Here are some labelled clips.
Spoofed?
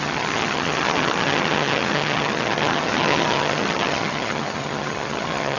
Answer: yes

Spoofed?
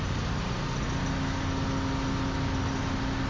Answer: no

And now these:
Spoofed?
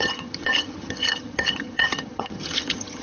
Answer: yes